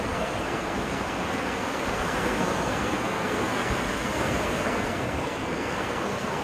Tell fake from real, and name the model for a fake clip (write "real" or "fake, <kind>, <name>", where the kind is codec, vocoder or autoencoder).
fake, codec, SNAC